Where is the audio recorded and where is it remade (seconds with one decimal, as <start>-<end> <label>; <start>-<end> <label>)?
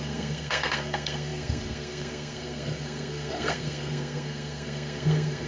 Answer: 0.0-5.5 remade